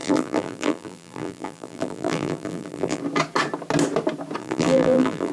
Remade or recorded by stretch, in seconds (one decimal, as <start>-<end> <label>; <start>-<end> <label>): 0.0-3.0 remade; 3.0-4.4 recorded; 4.4-5.3 remade